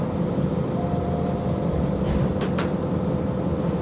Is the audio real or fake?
real